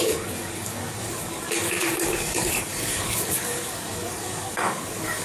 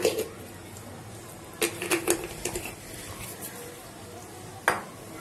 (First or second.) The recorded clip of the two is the second